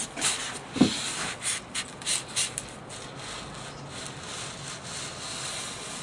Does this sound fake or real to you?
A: real